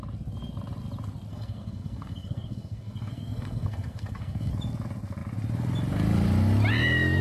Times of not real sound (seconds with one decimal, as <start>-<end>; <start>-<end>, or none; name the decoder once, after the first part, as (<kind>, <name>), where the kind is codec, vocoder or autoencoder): 1.3-4.5 (codec, SNAC)